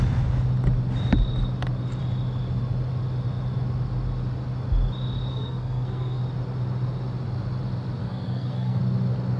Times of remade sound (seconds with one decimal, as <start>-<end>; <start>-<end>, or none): 5.3-6.2; 8.0-8.8